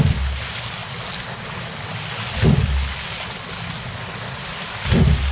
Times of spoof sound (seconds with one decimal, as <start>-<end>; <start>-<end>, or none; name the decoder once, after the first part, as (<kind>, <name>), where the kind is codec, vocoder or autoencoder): none